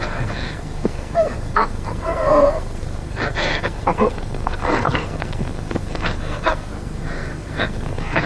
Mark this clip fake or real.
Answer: fake